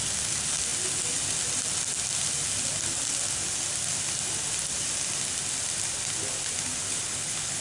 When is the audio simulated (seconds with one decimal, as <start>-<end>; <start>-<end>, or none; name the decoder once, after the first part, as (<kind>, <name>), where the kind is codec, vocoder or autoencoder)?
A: 6.8-7.6 (codec, HILCodec)